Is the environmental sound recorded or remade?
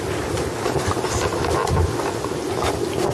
recorded